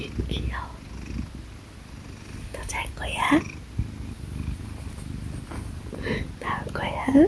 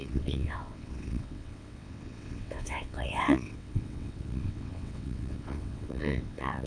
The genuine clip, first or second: first